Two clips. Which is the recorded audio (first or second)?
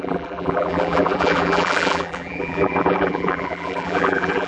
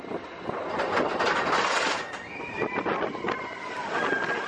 second